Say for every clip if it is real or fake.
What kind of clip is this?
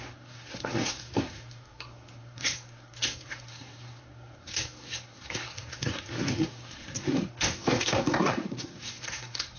fake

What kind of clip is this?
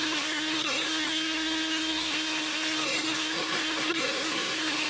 fake